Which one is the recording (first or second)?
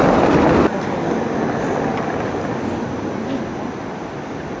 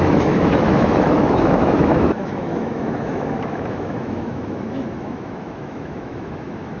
first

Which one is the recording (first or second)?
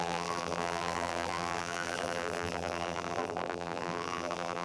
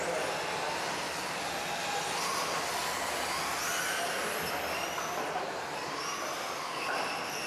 second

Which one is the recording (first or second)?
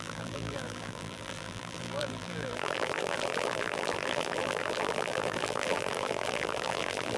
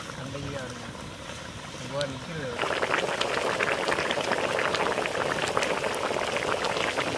second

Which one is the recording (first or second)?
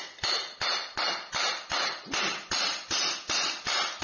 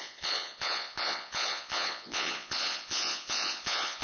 first